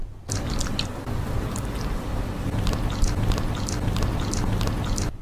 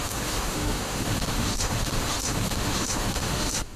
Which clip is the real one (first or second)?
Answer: first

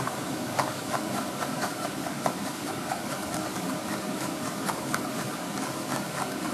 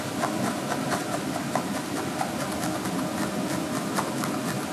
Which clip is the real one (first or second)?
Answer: second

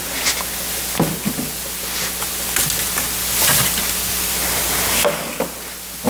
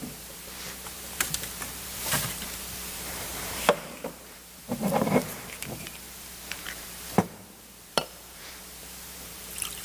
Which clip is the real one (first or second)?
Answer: first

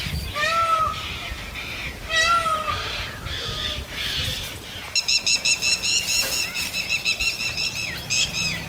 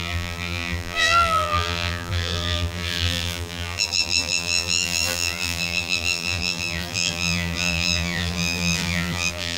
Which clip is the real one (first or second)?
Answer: first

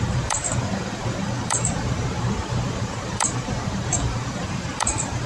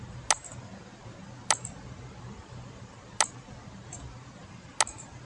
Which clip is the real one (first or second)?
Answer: second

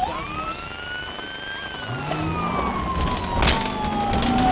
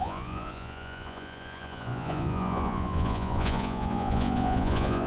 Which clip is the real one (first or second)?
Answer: first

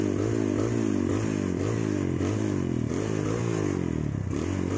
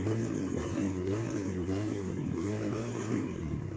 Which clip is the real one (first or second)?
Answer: first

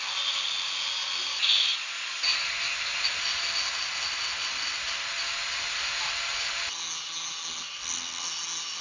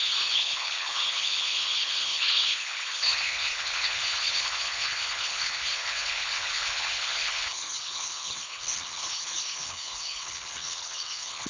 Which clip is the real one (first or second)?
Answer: first